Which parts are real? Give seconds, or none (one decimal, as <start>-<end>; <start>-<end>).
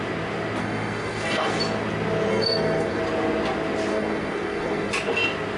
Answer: 0.0-0.6; 1.6-2.3; 3.0-3.9; 4.9-5.6